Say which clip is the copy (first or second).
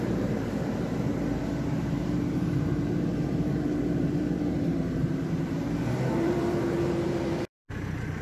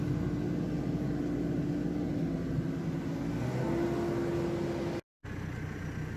first